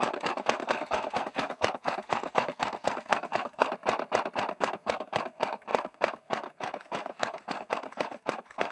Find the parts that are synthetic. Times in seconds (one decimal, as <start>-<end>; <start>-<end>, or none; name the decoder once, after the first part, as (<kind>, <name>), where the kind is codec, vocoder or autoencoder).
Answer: 0.0-3.7 (codec, SNAC); 4.5-8.7